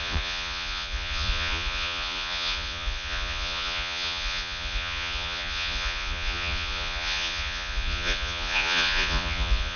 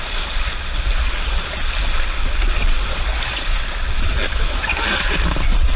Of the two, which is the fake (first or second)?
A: first